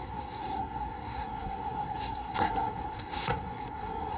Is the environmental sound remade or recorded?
remade